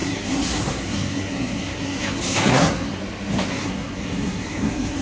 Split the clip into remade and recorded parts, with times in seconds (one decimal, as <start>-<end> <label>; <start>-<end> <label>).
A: 0.0-3.0 remade; 3.0-3.5 recorded; 3.5-5.0 remade